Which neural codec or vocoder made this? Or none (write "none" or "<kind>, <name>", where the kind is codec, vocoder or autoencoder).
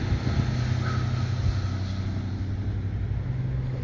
none